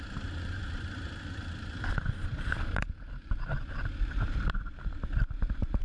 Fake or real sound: fake